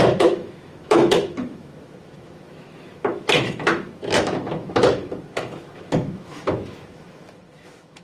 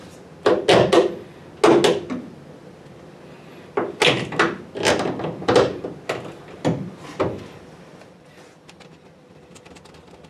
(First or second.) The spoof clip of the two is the first